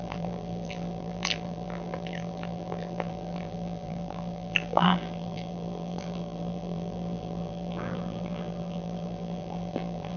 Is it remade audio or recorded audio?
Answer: remade